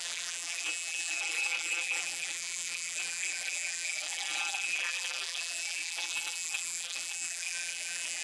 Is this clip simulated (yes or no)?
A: yes